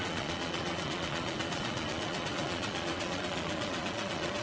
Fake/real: fake